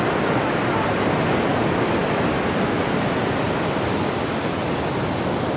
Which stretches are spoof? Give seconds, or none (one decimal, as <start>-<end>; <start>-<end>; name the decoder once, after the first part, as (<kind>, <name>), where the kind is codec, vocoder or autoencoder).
none